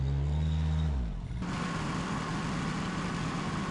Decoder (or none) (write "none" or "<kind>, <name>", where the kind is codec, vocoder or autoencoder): none